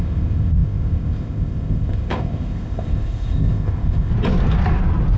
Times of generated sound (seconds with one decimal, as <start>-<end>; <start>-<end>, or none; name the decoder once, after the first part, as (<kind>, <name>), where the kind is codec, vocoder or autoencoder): 0.0-4.1 (codec, ZipCodec)